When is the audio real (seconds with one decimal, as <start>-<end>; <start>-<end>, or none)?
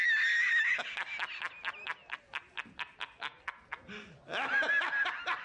0.0-5.4